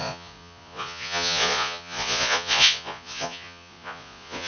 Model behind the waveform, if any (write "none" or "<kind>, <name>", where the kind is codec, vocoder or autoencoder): vocoder, Vocos